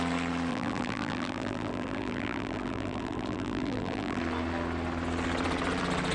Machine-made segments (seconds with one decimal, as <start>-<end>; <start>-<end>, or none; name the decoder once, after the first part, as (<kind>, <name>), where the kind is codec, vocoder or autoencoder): 0.5-4.2 (vocoder, BigVGAN v2)